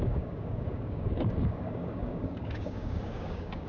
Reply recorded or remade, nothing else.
remade